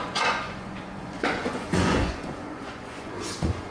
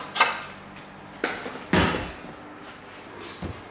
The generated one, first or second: first